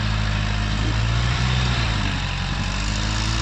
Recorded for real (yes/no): no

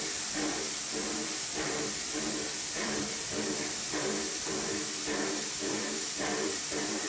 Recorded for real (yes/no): no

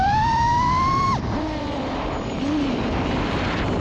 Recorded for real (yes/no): no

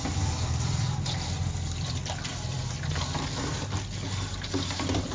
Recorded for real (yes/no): no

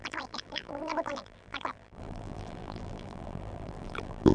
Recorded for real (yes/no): no